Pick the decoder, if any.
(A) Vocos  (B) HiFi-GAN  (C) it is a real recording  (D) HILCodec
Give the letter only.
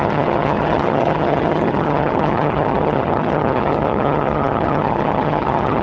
B